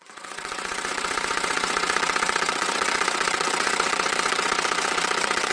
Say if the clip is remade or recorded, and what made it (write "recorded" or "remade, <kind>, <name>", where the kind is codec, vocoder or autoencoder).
remade, vocoder, WaveNeXt